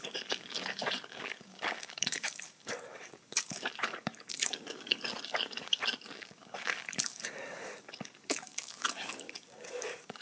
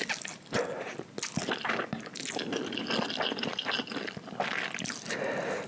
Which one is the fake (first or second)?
first